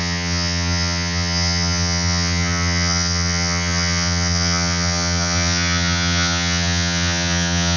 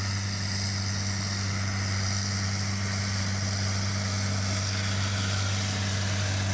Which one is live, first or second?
second